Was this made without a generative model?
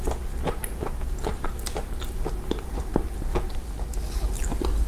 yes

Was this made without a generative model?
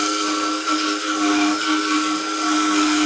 no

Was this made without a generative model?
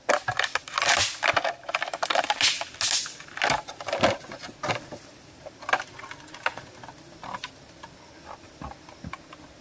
yes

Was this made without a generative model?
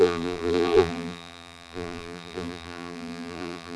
no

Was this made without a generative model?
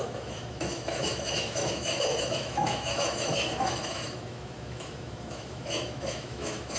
no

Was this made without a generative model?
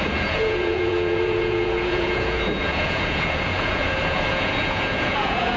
no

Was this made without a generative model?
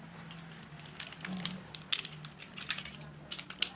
yes